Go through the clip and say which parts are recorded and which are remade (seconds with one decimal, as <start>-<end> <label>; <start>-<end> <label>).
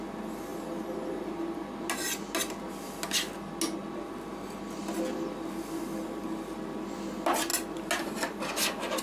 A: 0.0-9.0 recorded